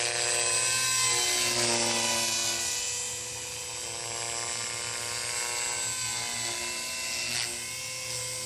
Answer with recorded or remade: recorded